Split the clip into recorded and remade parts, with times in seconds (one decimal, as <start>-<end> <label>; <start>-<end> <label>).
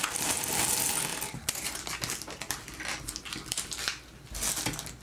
0.0-1.1 recorded; 1.1-1.8 remade; 1.8-5.0 recorded